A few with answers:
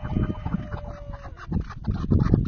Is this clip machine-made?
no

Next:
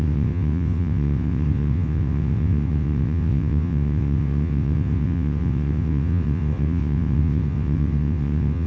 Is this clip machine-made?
yes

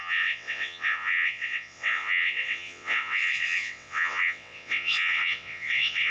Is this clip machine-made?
yes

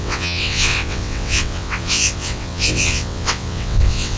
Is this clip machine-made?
yes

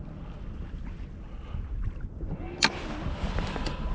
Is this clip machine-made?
no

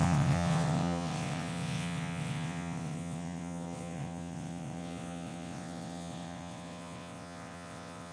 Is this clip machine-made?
yes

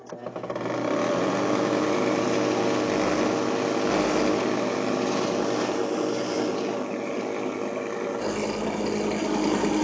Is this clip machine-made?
no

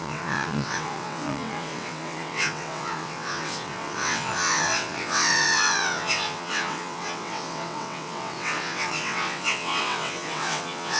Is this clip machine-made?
yes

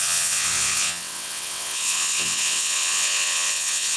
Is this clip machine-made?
yes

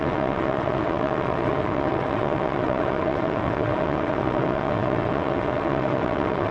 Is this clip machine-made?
yes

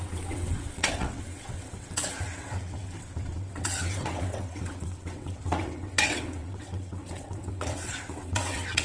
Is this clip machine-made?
yes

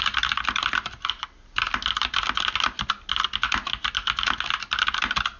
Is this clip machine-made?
no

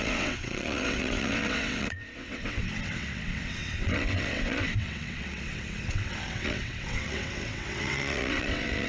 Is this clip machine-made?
yes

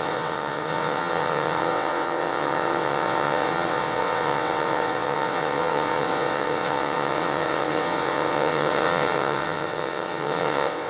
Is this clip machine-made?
yes